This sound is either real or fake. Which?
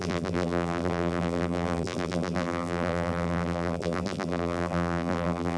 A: fake